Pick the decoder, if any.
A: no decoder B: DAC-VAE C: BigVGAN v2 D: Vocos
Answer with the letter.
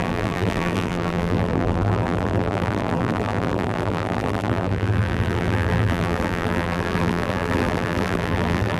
C